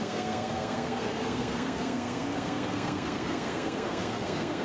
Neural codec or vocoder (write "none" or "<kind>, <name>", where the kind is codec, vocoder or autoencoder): codec, SNAC